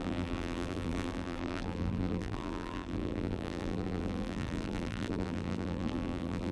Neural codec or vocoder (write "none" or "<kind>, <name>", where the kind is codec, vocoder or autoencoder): vocoder, BigVGAN v2